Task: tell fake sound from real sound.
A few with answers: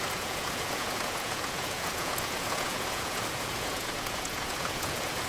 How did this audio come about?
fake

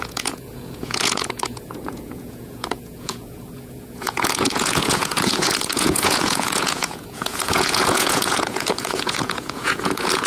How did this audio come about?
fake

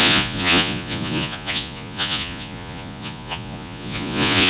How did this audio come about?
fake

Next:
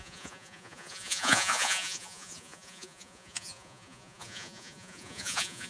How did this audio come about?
fake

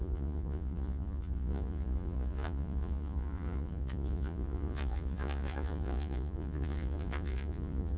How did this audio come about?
fake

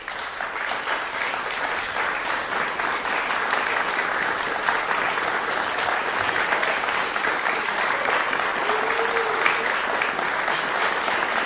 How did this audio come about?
real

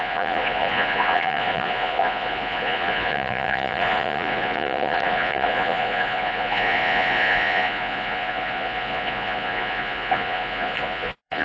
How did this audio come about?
fake